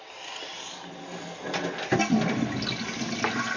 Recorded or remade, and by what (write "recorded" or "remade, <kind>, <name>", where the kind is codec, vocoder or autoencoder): recorded